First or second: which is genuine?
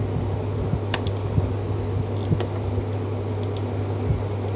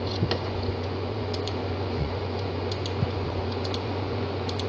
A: first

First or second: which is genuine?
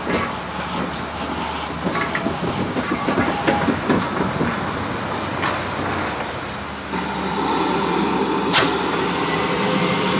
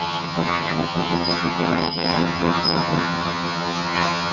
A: first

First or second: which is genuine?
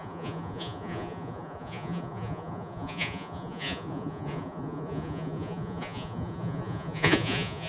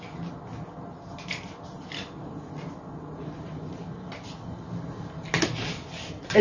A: second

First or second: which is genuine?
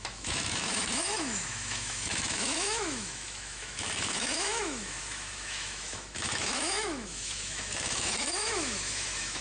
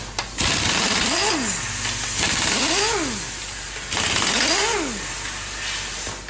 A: second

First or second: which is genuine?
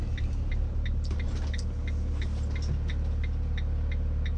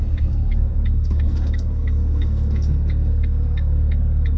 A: first